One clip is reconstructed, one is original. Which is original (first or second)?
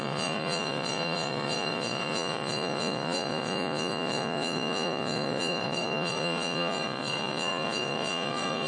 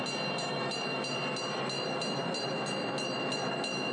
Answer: second